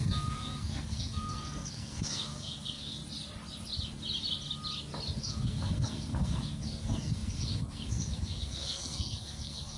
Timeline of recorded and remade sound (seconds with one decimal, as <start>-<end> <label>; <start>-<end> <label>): 0.0-3.0 remade; 3.0-5.2 recorded; 5.2-9.8 remade